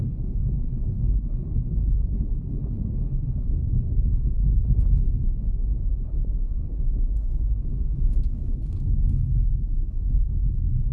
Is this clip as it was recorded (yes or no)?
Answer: no